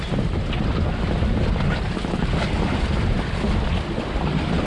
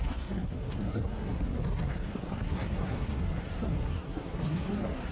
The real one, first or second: first